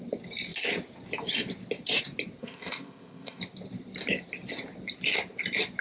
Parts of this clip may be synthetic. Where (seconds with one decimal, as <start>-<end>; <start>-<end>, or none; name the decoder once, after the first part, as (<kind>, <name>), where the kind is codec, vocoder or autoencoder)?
2.4-3.4 (codec, ZipCodec)